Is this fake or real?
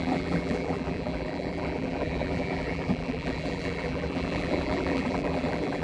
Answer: fake